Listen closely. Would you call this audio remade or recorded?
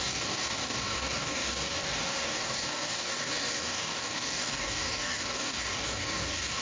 remade